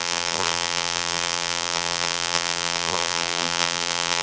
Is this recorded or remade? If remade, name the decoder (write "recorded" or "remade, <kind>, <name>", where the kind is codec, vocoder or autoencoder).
remade, vocoder, BigVGAN v2